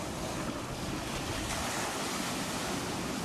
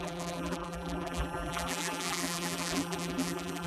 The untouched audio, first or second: first